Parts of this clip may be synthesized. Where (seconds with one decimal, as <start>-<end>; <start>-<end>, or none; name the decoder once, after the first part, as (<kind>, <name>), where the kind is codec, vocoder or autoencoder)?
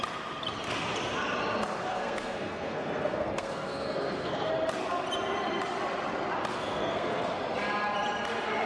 1.9-4.5 (codec, SNAC); 6.5-7.4